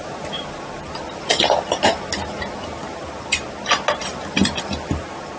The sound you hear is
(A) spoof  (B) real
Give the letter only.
B